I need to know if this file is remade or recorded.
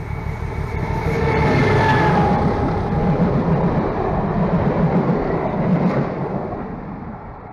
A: recorded